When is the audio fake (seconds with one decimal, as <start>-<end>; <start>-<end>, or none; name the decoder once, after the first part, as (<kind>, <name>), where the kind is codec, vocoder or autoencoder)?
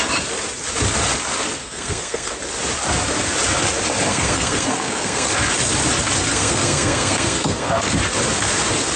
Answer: 1.6-2.3 (codec, SNAC); 4.1-5.3; 6.3-7.9